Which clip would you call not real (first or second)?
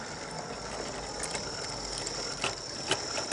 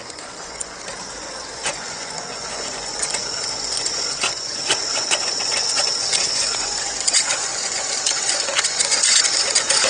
second